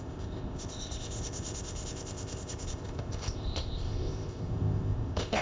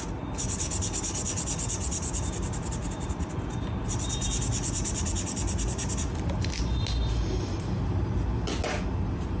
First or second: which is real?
second